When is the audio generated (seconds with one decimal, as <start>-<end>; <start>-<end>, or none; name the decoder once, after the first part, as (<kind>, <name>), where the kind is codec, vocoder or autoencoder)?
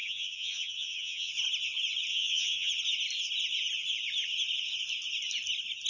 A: 0.0-1.3 (vocoder, HiFi-GAN); 2.1-2.7